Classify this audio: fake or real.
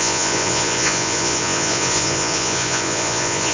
fake